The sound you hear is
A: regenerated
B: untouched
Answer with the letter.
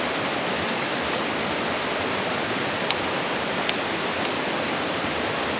B